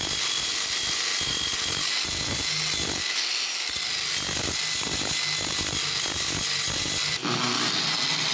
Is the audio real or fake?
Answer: real